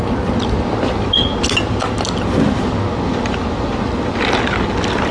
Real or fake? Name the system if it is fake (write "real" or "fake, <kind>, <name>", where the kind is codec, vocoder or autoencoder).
real